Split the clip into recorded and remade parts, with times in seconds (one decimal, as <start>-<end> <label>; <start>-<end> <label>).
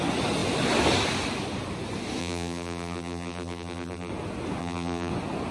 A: 0.0-2.2 recorded; 2.2-4.1 remade; 4.1-4.6 recorded; 4.6-5.1 remade; 5.1-5.5 recorded